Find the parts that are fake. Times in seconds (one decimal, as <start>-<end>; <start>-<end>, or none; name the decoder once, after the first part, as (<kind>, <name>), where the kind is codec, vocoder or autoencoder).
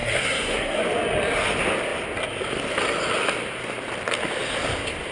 0.0-0.8 (codec, SNAC)